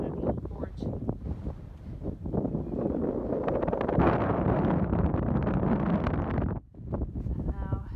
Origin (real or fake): real